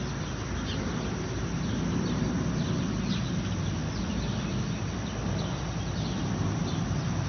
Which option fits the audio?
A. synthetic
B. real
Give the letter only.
B